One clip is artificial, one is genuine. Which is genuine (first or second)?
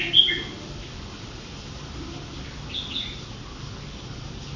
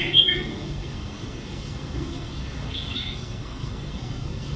first